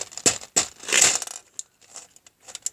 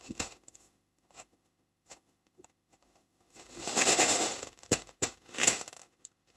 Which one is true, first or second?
first